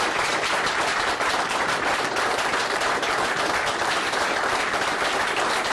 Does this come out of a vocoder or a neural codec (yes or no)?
yes